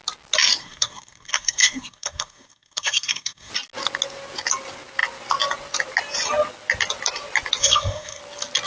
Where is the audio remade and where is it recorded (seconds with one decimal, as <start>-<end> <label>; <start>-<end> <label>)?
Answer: 0.0-0.6 recorded; 0.6-3.5 remade; 3.5-7.6 recorded; 7.6-8.2 remade; 8.2-8.7 recorded